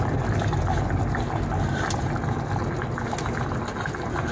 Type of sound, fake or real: real